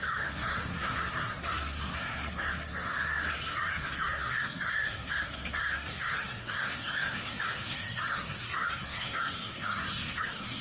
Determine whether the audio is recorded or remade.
remade